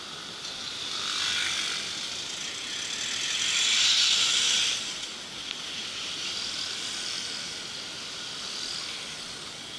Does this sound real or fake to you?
real